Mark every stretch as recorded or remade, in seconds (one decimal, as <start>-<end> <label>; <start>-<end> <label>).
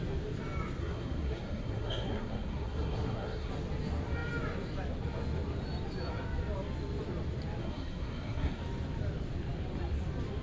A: 0.0-0.8 recorded; 0.8-3.5 remade; 3.5-7.6 recorded; 7.6-8.6 remade; 8.6-10.4 recorded